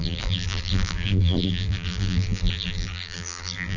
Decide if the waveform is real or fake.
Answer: fake